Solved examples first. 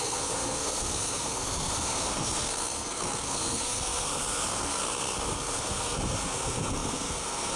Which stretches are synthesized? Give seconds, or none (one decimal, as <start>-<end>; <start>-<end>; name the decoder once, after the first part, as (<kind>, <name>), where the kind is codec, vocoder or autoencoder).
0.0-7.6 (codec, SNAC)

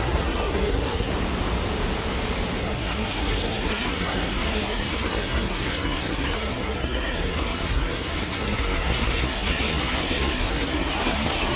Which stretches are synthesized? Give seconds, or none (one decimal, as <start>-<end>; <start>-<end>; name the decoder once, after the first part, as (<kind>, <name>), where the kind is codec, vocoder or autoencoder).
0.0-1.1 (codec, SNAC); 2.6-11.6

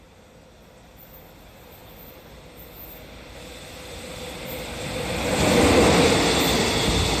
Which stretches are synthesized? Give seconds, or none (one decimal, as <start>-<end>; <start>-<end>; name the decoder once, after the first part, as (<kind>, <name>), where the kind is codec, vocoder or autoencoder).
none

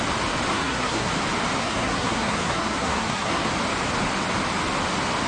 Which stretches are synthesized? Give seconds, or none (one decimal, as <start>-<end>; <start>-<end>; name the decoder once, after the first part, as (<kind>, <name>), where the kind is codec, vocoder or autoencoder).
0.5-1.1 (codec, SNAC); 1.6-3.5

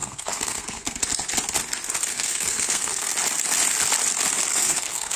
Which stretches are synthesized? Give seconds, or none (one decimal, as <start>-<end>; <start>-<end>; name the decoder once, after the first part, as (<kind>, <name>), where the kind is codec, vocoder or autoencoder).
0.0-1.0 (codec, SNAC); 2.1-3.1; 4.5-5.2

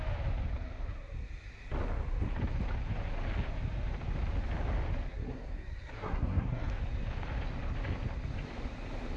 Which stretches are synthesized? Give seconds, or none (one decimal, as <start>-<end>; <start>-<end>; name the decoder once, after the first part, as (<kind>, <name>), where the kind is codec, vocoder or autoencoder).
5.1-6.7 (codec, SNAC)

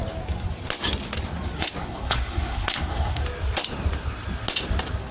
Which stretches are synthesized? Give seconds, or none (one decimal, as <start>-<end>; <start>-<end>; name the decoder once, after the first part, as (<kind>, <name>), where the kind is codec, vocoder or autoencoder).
1.8-3.2 (codec, SNAC)

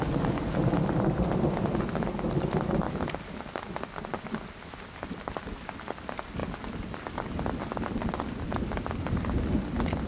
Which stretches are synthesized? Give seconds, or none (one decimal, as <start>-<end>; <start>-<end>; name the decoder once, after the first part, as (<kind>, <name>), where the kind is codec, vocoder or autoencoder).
none